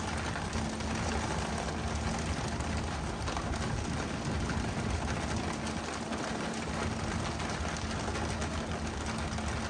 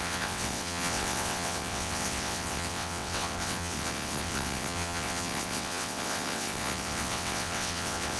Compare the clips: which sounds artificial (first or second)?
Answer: second